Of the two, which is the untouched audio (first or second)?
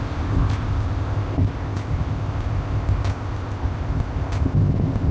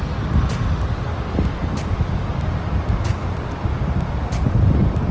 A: second